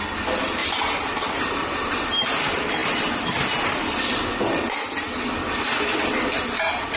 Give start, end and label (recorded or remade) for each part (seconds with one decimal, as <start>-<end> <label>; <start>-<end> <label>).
0.0-0.6 recorded; 0.6-2.3 remade; 2.3-7.0 recorded